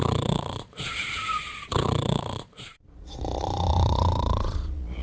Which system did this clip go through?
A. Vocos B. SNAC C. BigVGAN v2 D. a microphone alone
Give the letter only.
A